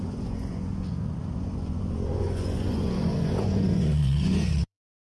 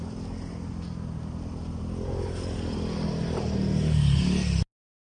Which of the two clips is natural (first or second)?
second